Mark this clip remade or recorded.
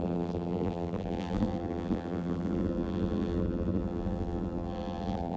remade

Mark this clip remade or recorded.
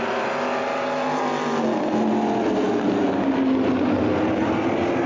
recorded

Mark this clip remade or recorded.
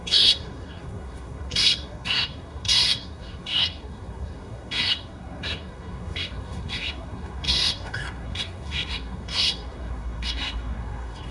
remade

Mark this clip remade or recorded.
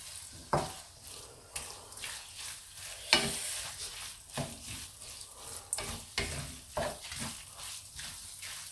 recorded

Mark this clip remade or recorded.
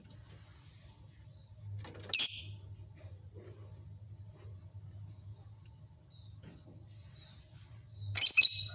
recorded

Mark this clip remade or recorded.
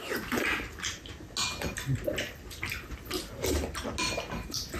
recorded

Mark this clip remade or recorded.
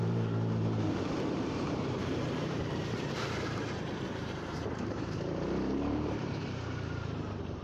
remade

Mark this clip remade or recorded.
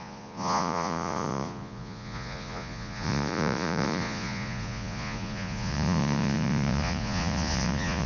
remade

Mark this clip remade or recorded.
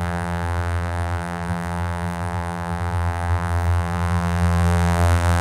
remade